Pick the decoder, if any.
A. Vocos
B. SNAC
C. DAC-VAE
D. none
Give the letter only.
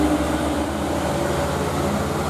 D